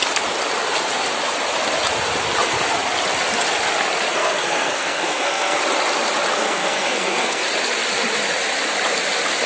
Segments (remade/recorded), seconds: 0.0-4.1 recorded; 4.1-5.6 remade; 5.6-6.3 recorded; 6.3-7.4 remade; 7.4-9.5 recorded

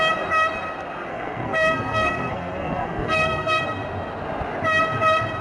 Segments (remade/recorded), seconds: 0.0-1.1 recorded; 1.1-3.6 remade; 3.6-5.4 recorded

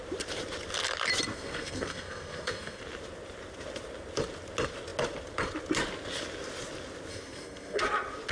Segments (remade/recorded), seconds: 0.0-1.3 recorded; 1.3-2.8 remade; 2.8-7.1 recorded; 7.1-7.8 remade; 7.8-8.3 recorded

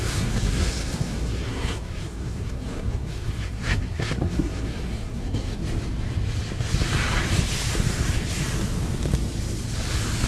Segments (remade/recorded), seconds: 0.0-5.6 remade; 5.6-10.3 recorded

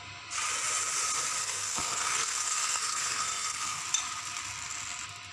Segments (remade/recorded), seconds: 0.0-1.4 recorded; 1.4-3.8 remade; 3.8-5.3 recorded

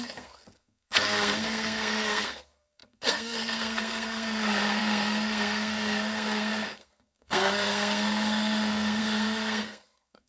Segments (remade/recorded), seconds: 0.0-10.3 remade